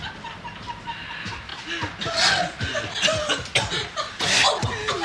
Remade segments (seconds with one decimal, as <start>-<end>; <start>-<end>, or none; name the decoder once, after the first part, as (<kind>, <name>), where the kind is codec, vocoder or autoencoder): none

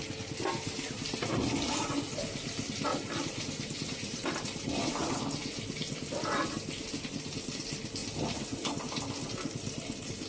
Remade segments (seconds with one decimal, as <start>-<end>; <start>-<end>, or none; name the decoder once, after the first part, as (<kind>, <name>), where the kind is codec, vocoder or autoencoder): 2.9-4.3 (vocoder, BigVGAN v2)

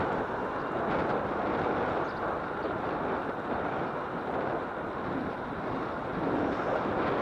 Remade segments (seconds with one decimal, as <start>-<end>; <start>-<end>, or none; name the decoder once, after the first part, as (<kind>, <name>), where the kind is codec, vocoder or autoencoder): none

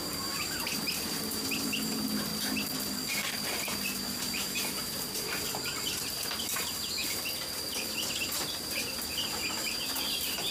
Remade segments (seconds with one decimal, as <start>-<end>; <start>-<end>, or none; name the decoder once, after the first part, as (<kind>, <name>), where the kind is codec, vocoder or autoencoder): 0.0-2.3 (vocoder, BigVGAN v2); 4.2-7.0; 8.3-10.5

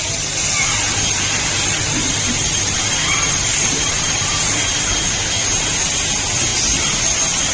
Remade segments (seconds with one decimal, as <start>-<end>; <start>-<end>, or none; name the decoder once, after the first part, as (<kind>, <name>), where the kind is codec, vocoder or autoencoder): 2.0-4.3 (vocoder, BigVGAN v2)